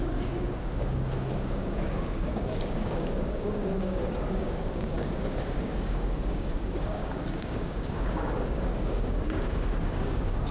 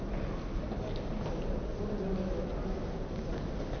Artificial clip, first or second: first